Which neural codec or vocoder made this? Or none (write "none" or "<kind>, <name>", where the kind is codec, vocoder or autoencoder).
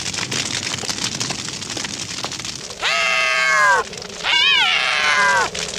none